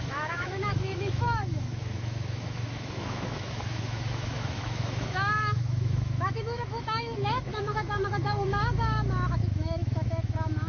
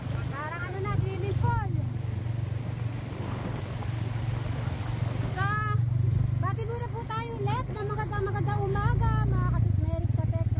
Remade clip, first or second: first